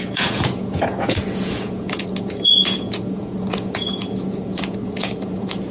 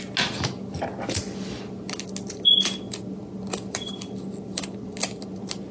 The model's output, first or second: first